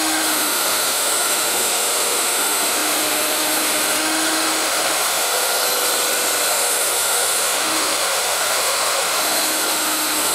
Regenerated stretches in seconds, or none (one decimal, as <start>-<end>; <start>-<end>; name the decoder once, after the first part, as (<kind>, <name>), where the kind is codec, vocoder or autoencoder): 0.0-5.6 (autoencoder, DAC-VAE); 6.5-10.3